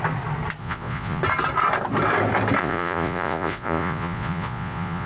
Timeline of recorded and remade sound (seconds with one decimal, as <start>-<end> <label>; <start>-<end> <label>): 0.0-0.6 recorded; 0.6-1.2 remade; 1.2-2.6 recorded; 2.6-5.1 remade